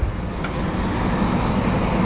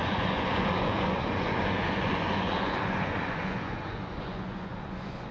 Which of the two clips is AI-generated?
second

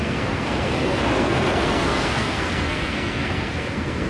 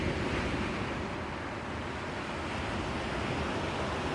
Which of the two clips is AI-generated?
first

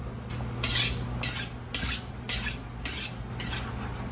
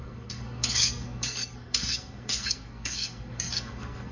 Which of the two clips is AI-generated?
second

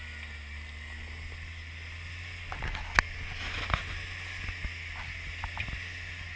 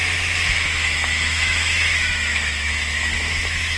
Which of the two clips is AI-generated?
second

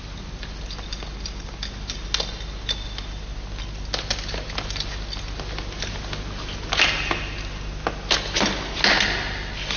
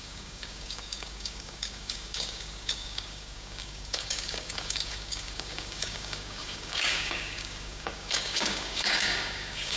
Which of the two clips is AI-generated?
second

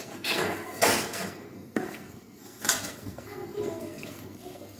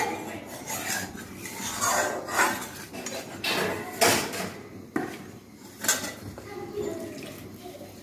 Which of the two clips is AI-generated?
first